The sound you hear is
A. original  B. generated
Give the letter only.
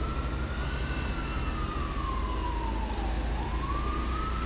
A